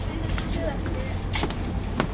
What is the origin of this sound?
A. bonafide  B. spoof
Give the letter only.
A